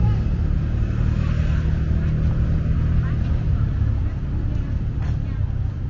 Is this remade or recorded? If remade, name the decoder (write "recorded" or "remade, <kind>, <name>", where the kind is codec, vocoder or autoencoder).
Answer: recorded